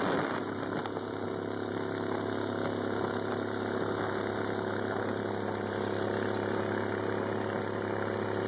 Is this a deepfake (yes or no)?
no